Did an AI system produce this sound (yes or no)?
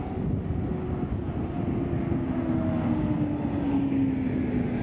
no